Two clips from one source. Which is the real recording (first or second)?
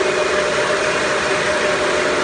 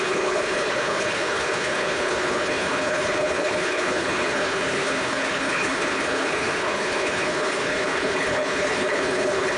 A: first